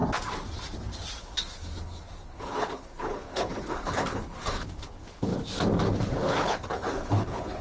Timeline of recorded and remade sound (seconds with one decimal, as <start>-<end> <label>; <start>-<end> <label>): 0.0-1.2 recorded; 1.2-5.3 remade; 5.3-6.0 recorded; 6.0-7.6 remade